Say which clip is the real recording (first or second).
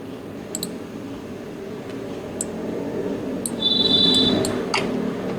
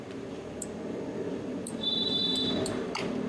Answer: first